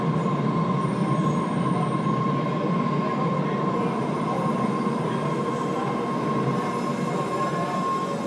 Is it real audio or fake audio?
real